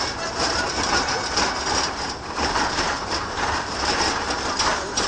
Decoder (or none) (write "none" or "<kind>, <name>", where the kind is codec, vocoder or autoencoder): vocoder, BigVGAN v2